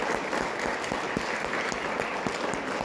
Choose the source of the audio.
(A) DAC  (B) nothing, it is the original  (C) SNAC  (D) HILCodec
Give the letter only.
B